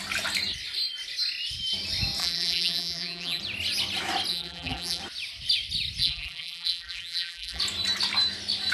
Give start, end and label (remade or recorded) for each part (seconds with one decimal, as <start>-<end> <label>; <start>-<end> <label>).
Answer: 0.0-2.2 recorded; 2.2-3.4 remade; 3.4-4.3 recorded; 4.3-5.0 remade; 5.0-6.0 recorded; 6.0-7.6 remade; 7.6-8.7 recorded